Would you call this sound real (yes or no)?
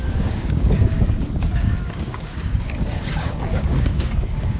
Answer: no